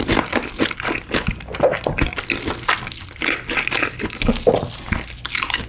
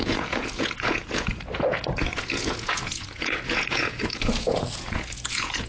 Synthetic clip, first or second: second